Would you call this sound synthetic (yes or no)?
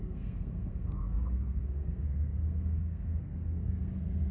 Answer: yes